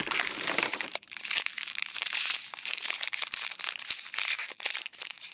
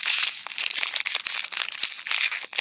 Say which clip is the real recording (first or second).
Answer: second